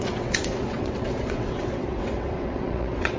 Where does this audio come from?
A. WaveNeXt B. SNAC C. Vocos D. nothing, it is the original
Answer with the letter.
A